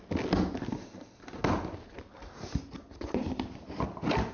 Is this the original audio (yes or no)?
yes